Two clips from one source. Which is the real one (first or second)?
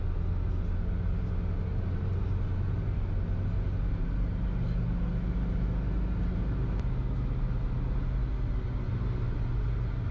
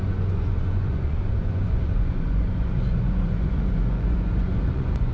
first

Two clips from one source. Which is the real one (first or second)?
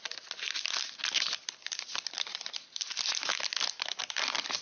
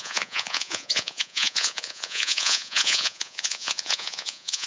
first